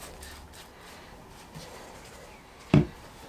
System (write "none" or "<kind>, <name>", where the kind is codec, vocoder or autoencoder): none